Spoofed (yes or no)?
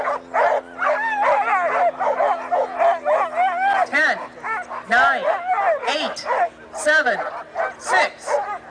no